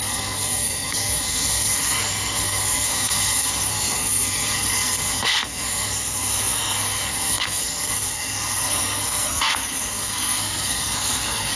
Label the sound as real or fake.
fake